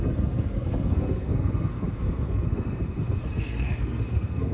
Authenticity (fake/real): fake